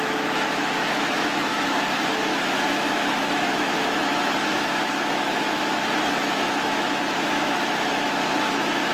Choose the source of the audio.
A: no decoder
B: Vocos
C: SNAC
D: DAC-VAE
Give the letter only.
D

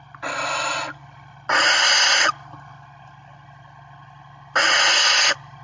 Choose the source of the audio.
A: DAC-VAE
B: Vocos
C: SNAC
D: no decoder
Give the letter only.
D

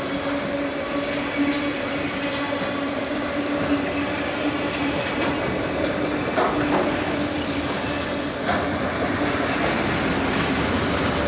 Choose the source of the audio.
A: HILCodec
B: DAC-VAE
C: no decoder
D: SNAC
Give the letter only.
C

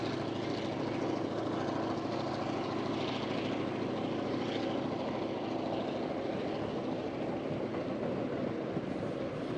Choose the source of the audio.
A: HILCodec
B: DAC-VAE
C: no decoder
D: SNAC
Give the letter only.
C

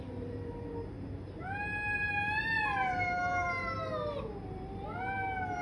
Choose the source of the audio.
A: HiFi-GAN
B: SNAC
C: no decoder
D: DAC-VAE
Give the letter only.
C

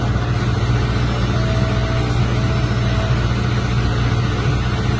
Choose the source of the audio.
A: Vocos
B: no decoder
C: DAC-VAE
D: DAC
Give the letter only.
B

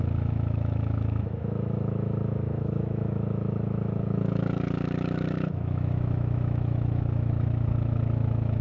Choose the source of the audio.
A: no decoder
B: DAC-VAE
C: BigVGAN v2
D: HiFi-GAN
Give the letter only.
B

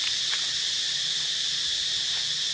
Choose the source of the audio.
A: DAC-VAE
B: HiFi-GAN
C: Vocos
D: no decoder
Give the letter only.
D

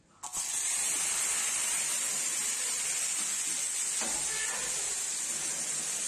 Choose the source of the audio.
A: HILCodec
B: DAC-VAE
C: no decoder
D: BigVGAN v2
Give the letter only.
C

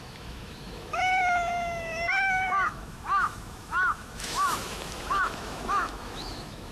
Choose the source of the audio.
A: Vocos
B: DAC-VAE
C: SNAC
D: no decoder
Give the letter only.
B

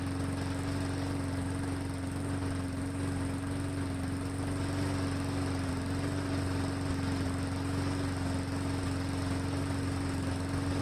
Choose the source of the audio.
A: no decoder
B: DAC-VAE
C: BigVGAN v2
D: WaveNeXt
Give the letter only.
A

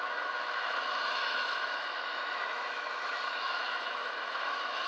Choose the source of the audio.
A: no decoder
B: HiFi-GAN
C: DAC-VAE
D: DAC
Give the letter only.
C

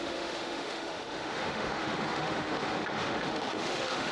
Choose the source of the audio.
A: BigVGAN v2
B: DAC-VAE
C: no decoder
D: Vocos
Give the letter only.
B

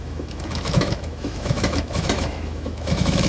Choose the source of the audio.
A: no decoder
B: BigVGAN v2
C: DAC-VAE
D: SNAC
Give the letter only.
C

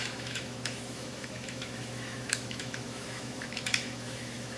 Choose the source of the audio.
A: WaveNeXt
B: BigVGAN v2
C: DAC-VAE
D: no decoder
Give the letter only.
C